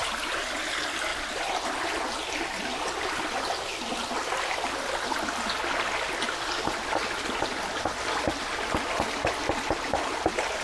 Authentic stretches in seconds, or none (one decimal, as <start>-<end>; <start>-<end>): 0.0-10.6